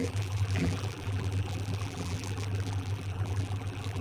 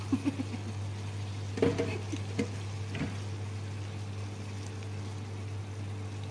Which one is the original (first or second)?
second